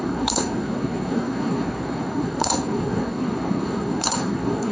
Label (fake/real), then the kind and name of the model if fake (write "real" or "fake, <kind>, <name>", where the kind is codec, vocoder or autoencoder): fake, codec, SNAC